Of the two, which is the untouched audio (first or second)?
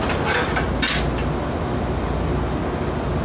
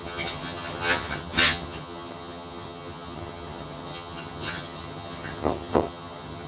first